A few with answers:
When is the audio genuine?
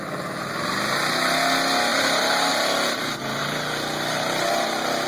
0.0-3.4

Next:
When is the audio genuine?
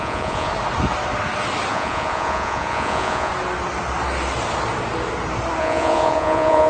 0.5-1.7; 3.3-5.6